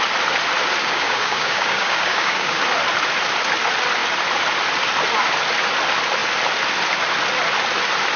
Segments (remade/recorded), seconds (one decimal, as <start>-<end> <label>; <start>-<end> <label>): 0.0-0.8 recorded; 0.8-2.6 remade; 2.6-8.2 recorded